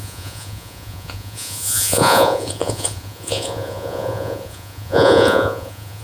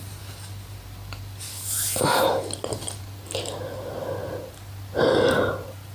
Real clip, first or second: second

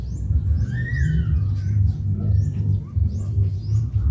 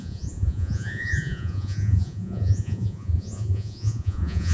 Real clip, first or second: first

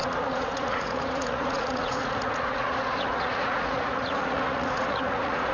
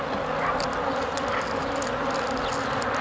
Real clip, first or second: second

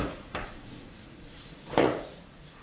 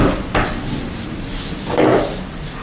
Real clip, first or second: second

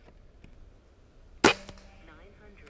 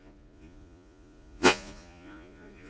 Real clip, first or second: first